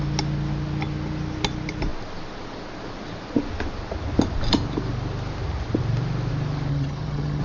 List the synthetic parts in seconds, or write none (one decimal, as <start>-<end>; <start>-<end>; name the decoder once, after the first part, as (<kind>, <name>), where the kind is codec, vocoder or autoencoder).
6.7-7.4 (vocoder, HiFi-GAN)